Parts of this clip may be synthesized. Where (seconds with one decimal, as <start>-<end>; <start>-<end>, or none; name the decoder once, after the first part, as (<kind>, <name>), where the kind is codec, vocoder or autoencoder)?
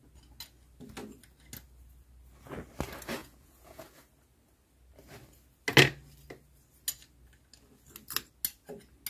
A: 3.2-3.8 (vocoder, Vocos)